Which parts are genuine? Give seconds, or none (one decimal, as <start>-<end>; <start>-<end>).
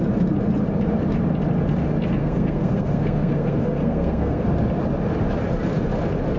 0.0-2.2; 4.4-6.4